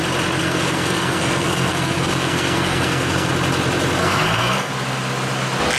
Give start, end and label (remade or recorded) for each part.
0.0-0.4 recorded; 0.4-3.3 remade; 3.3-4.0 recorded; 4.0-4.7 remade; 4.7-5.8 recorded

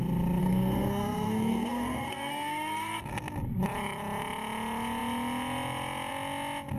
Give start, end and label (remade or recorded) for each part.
0.0-0.4 recorded; 0.4-3.0 remade; 3.0-6.8 recorded

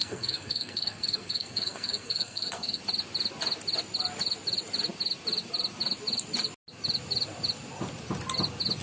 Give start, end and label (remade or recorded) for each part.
0.0-2.8 remade; 2.8-8.8 recorded

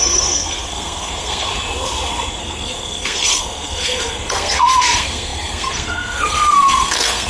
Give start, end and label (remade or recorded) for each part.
0.0-1.5 remade; 1.5-2.4 recorded; 2.4-7.3 remade

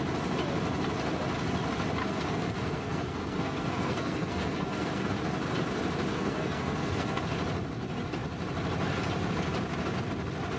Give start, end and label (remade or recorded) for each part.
0.0-2.0 recorded; 2.0-5.1 remade; 5.1-6.1 recorded; 6.1-7.2 remade; 7.2-10.6 recorded

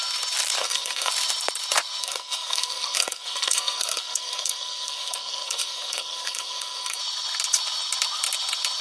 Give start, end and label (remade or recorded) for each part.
0.0-0.6 recorded; 0.6-1.1 remade; 1.1-2.0 recorded; 2.0-7.0 remade; 7.0-8.8 recorded

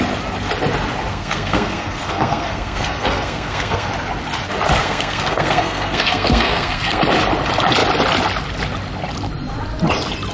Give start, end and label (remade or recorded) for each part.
0.0-1.1 recorded; 1.1-3.9 remade; 3.9-4.8 recorded; 4.8-7.0 remade; 7.0-10.3 recorded

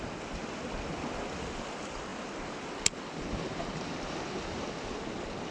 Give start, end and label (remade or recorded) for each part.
0.0-5.5 recorded